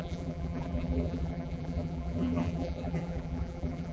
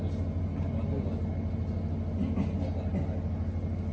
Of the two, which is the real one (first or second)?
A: second